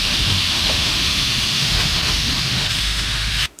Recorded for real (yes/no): no